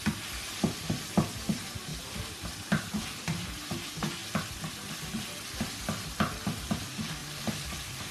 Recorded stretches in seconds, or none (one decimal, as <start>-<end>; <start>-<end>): 0.0-1.9; 3.7-4.2; 5.1-7.2